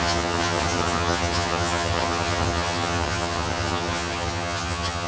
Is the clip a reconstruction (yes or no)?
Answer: yes